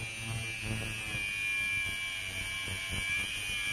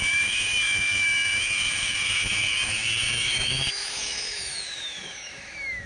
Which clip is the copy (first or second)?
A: second